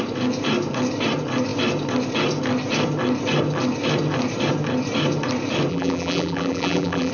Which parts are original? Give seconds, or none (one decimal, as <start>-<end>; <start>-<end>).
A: 0.0-5.7